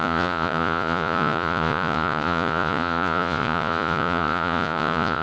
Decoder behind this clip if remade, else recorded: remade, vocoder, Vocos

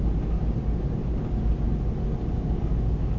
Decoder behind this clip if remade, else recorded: recorded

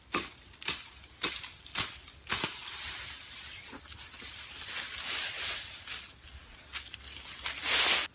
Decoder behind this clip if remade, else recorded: recorded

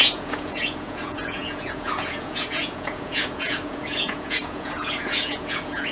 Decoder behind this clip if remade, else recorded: remade, vocoder, Vocos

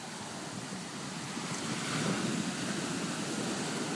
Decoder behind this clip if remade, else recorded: recorded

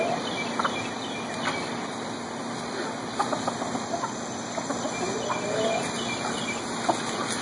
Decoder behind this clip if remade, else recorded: recorded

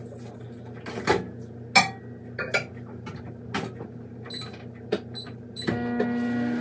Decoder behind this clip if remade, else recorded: recorded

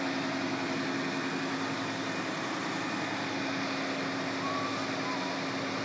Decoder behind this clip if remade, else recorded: recorded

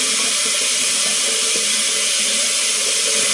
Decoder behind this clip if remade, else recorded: recorded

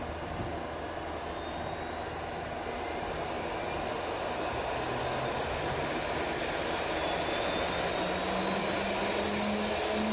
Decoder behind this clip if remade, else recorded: recorded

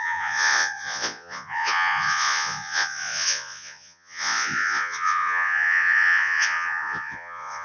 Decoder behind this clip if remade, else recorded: remade, vocoder, Vocos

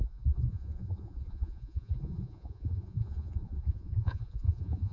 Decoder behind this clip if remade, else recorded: remade, vocoder, Vocos